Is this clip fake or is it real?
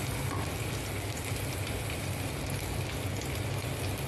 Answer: real